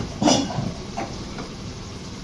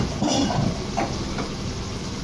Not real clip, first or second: first